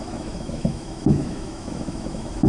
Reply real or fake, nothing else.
fake